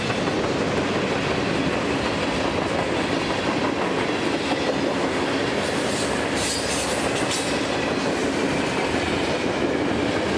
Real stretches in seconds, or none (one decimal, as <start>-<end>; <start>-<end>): 0.0-10.4